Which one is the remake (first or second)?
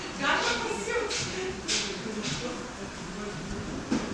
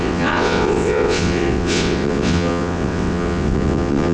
second